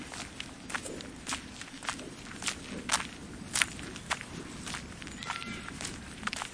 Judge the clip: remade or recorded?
recorded